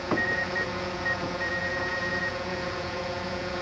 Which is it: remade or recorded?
remade